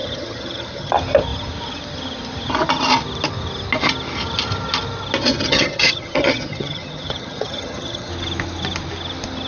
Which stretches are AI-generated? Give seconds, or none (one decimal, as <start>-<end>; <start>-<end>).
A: 0.0-0.9; 5.3-8.1